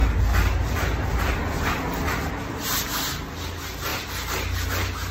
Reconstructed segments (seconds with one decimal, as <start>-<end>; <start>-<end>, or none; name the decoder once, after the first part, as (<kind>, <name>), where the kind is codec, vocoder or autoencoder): none